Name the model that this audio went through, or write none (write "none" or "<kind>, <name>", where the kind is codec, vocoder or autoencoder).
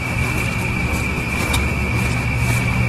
none